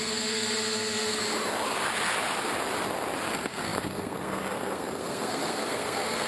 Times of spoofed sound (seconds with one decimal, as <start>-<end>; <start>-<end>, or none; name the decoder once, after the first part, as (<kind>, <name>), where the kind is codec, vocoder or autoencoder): 0.0-1.2 (codec, SNAC); 3.3-6.3